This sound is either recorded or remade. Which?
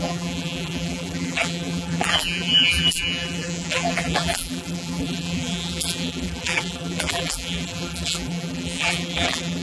remade